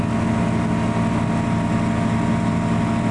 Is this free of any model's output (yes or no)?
yes